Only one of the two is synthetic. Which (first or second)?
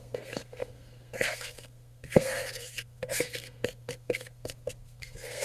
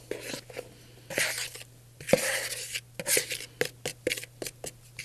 first